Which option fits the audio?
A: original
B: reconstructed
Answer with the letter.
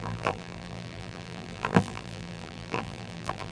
B